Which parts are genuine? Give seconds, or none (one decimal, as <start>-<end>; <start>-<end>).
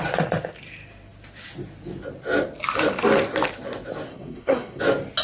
0.0-4.1; 4.8-5.2